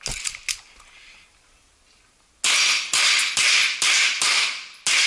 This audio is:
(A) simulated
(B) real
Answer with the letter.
B